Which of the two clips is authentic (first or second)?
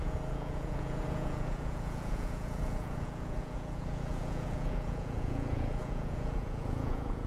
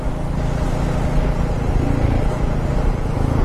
second